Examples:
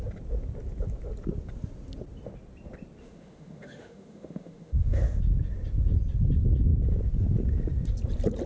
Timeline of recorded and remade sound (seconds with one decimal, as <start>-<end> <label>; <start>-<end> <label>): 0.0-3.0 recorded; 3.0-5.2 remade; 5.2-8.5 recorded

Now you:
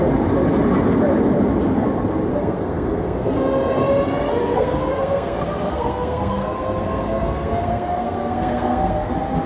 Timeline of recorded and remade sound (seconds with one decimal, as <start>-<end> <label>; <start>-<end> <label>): 0.0-2.3 recorded; 2.3-3.3 remade; 3.3-4.4 recorded; 4.4-9.1 remade; 9.1-9.5 recorded

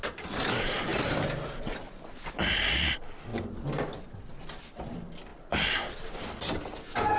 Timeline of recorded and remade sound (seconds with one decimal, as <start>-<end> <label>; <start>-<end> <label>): 0.0-7.2 recorded

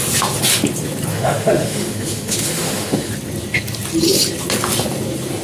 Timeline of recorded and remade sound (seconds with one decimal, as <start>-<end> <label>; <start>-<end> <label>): 0.0-1.1 recorded; 1.1-3.1 remade; 3.1-5.4 recorded